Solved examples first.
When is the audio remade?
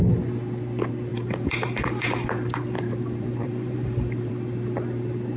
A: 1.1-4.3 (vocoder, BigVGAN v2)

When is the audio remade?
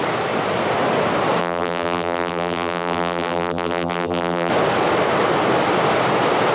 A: 1.4-4.5 (vocoder, BigVGAN v2)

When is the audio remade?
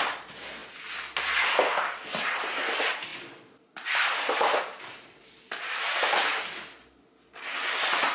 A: 3.1-6.0 (vocoder, BigVGAN v2)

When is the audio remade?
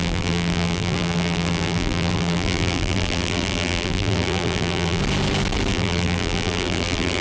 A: 0.0-5.0 (vocoder, BigVGAN v2); 5.7-7.2